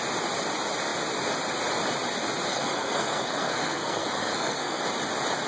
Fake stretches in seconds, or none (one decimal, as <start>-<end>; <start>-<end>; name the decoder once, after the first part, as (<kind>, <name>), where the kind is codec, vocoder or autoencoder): 2.5-4.8 (codec, SNAC)